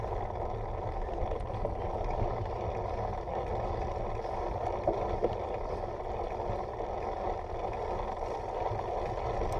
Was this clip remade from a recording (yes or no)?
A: no